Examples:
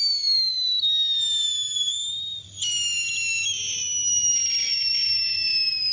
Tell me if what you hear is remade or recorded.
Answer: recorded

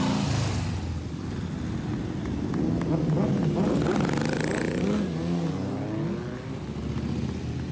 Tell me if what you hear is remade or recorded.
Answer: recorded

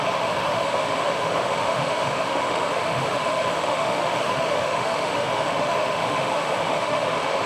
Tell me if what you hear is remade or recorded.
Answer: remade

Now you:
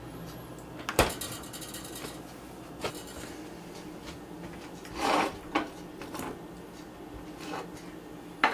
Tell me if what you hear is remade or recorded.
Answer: recorded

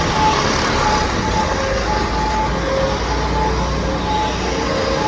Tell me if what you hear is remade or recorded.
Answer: recorded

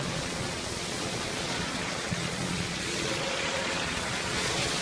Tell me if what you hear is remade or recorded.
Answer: remade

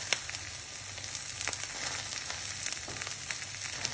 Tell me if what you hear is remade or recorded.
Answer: recorded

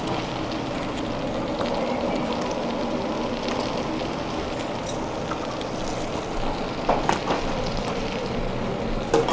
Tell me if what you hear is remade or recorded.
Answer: recorded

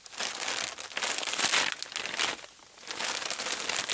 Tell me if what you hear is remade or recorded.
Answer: recorded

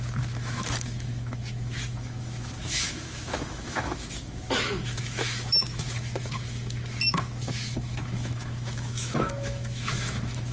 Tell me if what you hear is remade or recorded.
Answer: remade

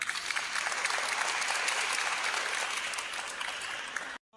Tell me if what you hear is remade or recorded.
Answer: recorded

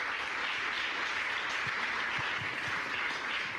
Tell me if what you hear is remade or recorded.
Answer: recorded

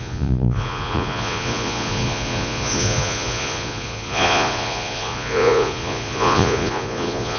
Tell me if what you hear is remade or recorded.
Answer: remade